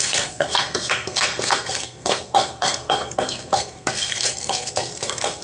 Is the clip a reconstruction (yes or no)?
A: yes